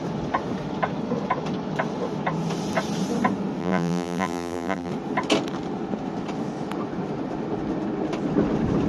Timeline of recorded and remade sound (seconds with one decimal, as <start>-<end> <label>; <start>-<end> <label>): 0.0-3.6 recorded; 3.6-4.9 remade; 4.9-8.9 recorded